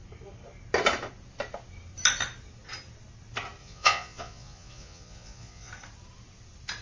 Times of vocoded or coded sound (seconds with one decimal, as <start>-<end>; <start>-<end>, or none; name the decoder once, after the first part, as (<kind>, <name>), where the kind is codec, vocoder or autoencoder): 3.6-5.7 (vocoder, Vocos)